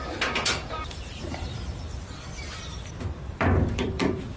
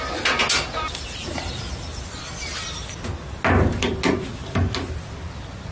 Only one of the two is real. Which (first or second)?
second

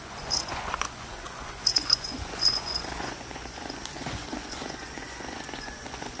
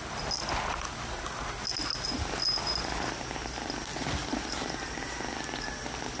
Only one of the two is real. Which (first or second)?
second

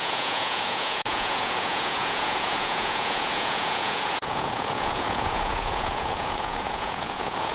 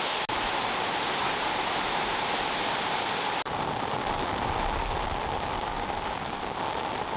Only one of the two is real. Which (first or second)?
second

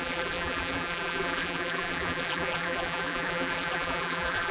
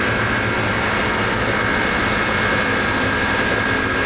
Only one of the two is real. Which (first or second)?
second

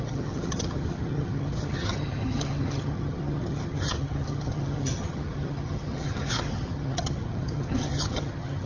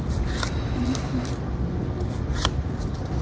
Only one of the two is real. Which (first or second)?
second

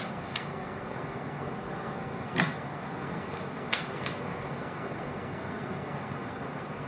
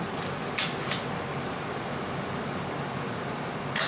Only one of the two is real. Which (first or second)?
second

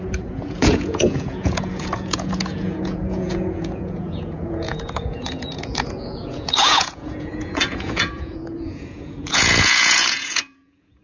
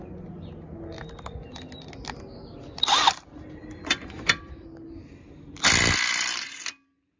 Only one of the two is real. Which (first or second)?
second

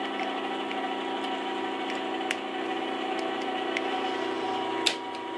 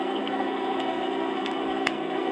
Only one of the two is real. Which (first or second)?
first